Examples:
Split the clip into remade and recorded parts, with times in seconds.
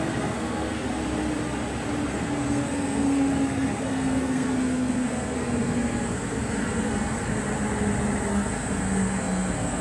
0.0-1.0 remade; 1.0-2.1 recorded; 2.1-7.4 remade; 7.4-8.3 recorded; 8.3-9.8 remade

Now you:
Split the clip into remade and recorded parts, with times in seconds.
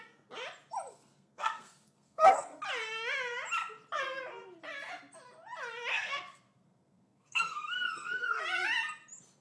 0.0-0.9 recorded; 0.9-2.6 remade; 2.6-5.9 recorded; 5.9-8.4 remade; 8.4-9.4 recorded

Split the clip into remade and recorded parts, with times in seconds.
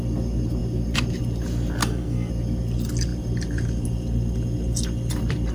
0.0-1.8 recorded; 1.8-2.3 remade; 2.3-5.5 recorded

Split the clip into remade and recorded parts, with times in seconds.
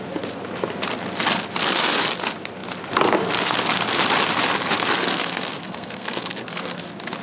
0.0-5.1 recorded; 5.1-6.8 remade; 6.8-7.2 recorded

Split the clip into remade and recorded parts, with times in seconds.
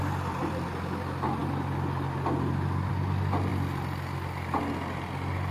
0.0-5.5 recorded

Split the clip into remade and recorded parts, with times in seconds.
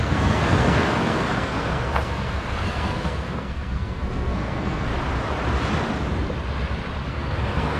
0.0-4.9 remade; 4.9-7.1 recorded; 7.1-7.8 remade